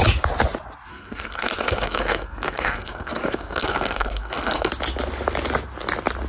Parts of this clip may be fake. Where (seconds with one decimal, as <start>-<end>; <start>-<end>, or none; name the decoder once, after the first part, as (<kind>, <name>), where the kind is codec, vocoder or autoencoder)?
0.9-4.7 (codec, SNAC)